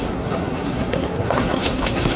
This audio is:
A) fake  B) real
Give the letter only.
A